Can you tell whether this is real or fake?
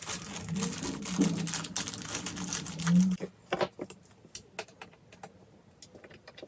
real